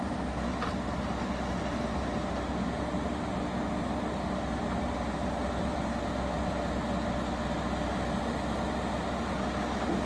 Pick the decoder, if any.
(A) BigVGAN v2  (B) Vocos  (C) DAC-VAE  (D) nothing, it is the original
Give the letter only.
D